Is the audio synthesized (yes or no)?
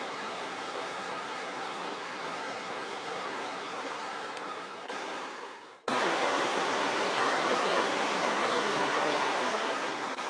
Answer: yes